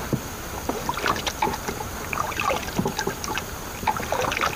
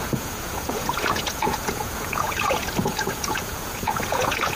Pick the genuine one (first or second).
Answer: first